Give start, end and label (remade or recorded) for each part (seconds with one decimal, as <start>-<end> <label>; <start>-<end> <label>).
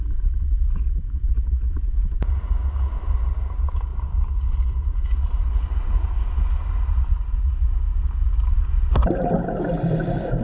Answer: 0.0-10.4 recorded